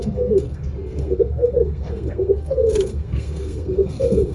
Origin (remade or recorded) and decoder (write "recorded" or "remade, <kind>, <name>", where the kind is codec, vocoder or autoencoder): remade, codec, SNAC